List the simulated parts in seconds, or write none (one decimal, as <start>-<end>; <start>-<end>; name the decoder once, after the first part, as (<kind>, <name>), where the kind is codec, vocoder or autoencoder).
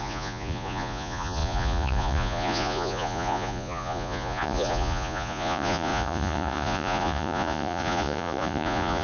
0.0-9.0 (vocoder, Vocos)